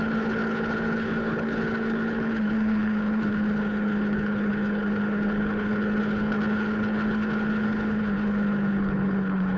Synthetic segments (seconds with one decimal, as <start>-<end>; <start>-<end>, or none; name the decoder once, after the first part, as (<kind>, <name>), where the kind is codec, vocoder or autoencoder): 0.0-9.6 (codec, HILCodec)